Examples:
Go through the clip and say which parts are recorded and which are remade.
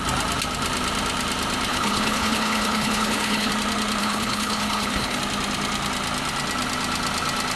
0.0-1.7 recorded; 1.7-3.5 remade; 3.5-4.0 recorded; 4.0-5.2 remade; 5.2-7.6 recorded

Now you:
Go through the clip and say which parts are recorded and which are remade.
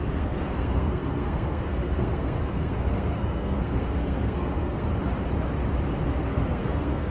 0.0-4.9 remade; 4.9-6.1 recorded; 6.1-7.1 remade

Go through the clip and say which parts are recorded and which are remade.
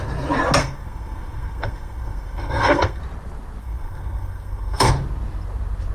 0.0-0.6 recorded; 0.6-3.0 remade; 3.0-3.6 recorded; 3.6-4.9 remade; 4.9-5.9 recorded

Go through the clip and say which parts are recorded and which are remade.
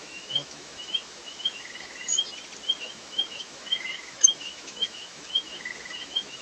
0.0-2.1 remade; 2.1-2.8 recorded; 2.8-6.4 remade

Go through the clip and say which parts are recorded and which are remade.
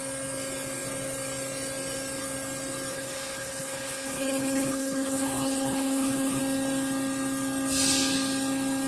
0.0-2.9 recorded; 2.9-6.4 remade; 6.4-8.9 recorded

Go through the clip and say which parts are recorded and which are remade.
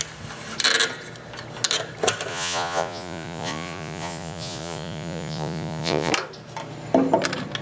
0.0-2.3 recorded; 2.3-6.1 remade; 6.1-7.6 recorded